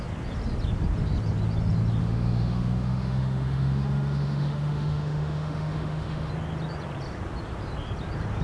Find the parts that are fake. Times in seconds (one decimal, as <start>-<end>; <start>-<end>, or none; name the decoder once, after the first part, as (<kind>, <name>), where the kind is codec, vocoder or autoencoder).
2.0-6.3 (autoencoder, DAC-VAE)